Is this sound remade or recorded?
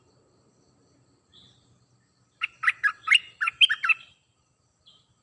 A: remade